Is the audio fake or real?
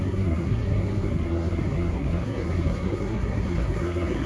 fake